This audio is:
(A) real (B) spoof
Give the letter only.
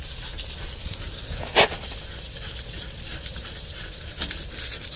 A